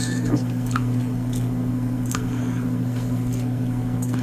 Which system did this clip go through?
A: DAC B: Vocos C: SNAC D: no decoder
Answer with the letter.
C